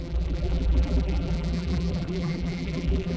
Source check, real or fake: fake